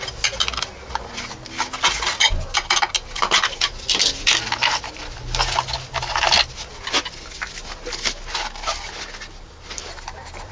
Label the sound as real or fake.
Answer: real